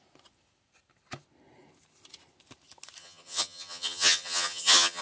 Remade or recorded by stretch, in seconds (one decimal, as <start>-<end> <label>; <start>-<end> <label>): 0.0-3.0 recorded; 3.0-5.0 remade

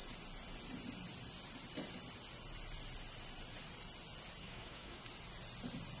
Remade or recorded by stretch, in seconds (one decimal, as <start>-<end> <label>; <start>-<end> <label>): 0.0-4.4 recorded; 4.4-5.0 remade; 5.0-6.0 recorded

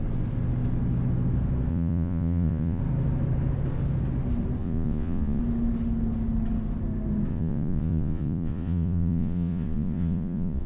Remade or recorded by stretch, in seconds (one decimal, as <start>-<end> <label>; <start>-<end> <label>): 0.0-1.7 recorded; 1.7-2.8 remade; 2.8-4.6 recorded; 4.6-5.4 remade; 5.4-7.3 recorded; 7.3-10.7 remade

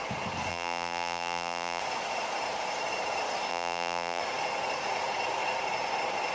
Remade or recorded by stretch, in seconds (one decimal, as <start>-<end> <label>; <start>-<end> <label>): 0.0-0.5 recorded; 0.5-1.8 remade; 1.8-3.5 recorded; 3.5-4.2 remade; 4.2-6.3 recorded